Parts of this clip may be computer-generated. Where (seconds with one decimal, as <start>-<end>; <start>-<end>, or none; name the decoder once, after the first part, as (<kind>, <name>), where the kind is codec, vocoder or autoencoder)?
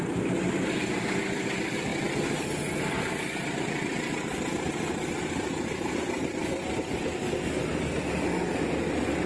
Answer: 0.0-1.9 (vocoder, BigVGAN v2); 2.9-6.4; 7.7-9.3